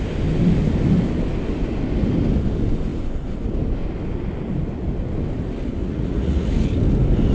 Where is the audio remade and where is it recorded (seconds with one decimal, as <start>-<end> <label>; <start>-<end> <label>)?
0.0-5.8 recorded; 5.8-6.5 remade; 6.5-7.3 recorded